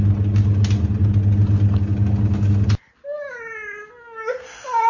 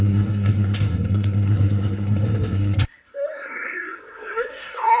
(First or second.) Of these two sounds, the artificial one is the second